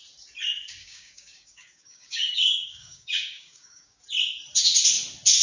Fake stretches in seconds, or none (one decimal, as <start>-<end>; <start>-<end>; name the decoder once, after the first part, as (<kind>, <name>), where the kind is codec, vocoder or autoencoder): 0.8-4.0 (codec, DAC)